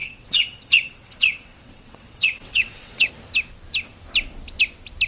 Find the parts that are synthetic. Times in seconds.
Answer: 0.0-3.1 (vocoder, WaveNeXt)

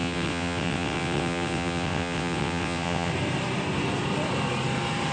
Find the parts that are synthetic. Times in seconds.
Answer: 0.0-3.1 (vocoder, WaveNeXt)

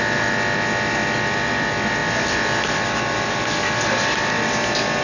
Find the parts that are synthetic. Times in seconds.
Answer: none